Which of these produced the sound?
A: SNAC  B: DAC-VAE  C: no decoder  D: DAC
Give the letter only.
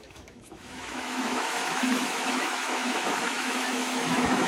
B